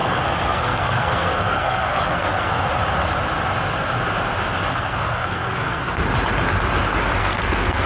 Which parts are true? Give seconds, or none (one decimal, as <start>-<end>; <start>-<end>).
2.7-4.7; 6.0-7.2